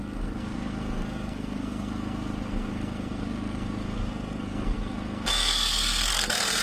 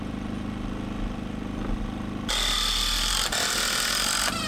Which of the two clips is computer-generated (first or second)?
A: first